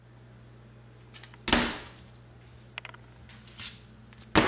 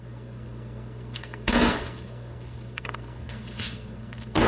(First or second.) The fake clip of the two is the second